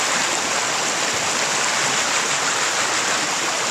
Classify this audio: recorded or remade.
recorded